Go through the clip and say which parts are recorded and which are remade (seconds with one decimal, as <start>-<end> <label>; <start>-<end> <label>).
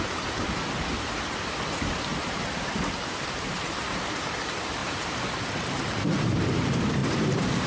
0.0-2.1 recorded; 2.1-4.2 remade; 4.2-7.0 recorded; 7.0-7.7 remade